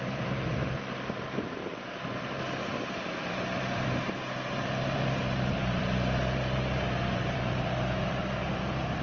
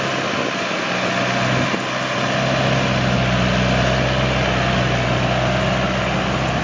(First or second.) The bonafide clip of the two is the second